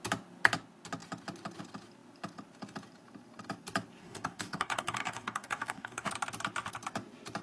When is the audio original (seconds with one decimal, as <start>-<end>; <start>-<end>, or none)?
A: 0.0-4.0; 6.1-7.4